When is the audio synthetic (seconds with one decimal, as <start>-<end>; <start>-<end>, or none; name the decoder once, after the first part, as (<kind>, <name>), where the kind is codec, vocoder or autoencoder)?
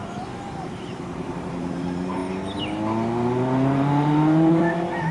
0.0-2.2 (vocoder, BigVGAN v2); 4.5-5.1